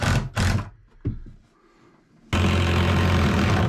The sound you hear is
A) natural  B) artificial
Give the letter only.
A